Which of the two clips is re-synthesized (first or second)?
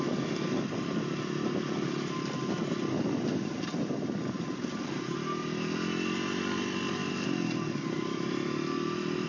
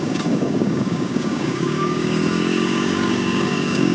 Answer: second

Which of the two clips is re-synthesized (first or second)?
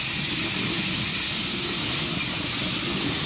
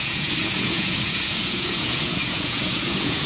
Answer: second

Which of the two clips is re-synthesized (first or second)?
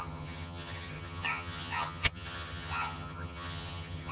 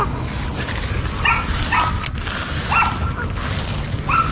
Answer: first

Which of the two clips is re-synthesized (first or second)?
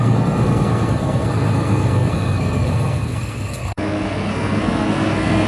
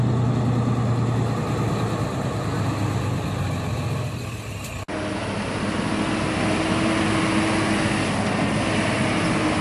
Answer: first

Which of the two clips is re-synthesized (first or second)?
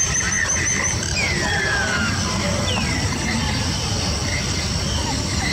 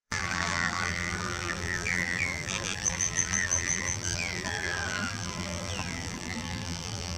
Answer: second